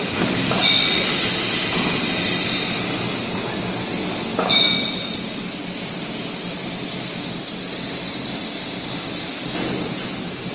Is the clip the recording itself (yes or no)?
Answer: yes